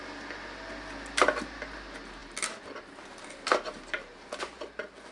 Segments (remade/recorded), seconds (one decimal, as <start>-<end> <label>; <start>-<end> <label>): 0.0-5.1 recorded